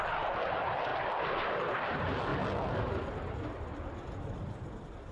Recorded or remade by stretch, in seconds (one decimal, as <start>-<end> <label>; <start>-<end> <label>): 0.0-5.1 recorded